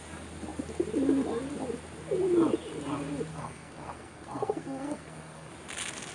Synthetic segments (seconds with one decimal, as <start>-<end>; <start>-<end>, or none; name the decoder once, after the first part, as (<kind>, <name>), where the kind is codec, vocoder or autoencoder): 3.3-5.5 (codec, SNAC)